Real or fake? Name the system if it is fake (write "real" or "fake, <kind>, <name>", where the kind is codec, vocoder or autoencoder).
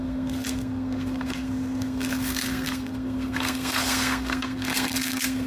fake, codec, SNAC